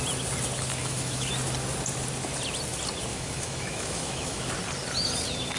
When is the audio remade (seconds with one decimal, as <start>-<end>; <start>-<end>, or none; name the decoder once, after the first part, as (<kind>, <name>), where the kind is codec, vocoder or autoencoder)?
0.8-1.3 (autoencoder, DAC-VAE); 3.1-4.5